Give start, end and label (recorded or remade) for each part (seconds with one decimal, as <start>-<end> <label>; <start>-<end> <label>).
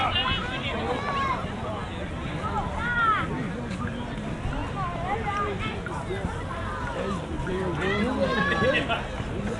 0.0-9.6 recorded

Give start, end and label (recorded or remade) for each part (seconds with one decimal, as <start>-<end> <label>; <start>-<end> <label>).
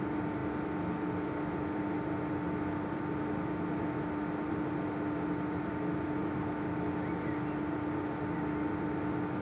0.0-9.4 recorded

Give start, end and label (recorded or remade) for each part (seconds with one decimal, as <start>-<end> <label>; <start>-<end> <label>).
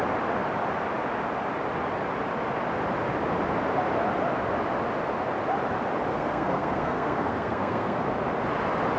0.0-6.1 recorded; 6.1-8.0 remade; 8.0-9.0 recorded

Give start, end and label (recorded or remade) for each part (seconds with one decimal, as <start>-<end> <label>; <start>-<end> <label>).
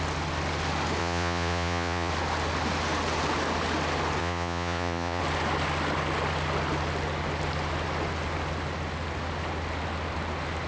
0.0-1.0 recorded; 1.0-2.1 remade; 2.1-4.2 recorded; 4.2-5.2 remade; 5.2-10.7 recorded